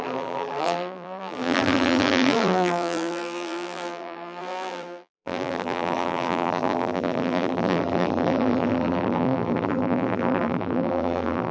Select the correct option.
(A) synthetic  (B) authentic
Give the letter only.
A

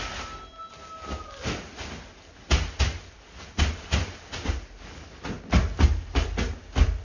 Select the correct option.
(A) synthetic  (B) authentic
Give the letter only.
B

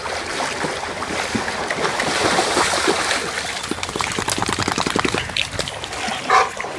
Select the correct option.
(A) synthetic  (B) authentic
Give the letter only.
B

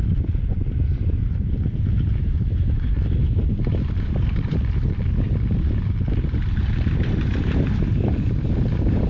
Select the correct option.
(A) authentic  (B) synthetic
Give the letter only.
B